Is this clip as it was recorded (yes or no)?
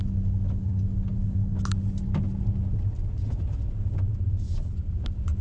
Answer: yes